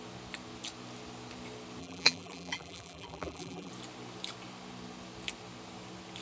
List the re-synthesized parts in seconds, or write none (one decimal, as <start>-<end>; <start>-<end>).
1.8-3.7